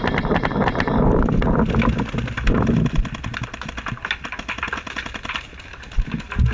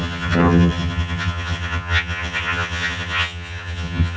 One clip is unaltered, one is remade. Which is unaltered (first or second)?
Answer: first